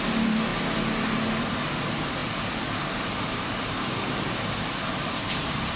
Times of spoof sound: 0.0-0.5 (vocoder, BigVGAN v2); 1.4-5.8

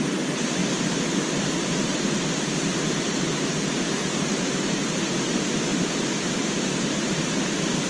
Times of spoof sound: 0.0-0.6 (vocoder, BigVGAN v2); 1.4-5.7; 6.4-7.9

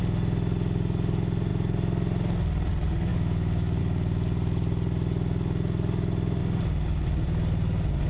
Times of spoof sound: 3.1-3.8 (autoencoder, DAC-VAE)

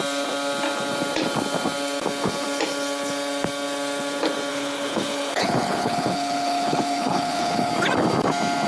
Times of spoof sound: 4.5-7.7 (codec, HILCodec)

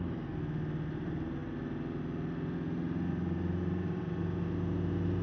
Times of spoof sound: none

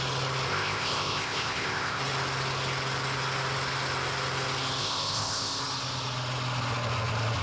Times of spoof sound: 0.5-2.0 (codec, ZipCodec); 4.8-5.6